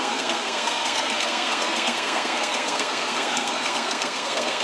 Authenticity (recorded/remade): remade